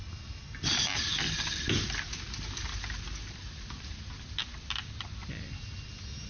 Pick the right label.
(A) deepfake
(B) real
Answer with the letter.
B